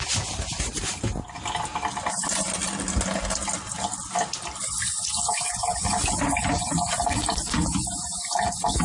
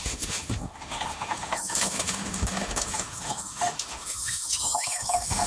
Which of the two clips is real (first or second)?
first